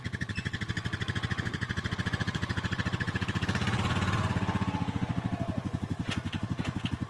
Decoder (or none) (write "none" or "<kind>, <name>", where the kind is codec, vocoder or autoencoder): vocoder, Vocos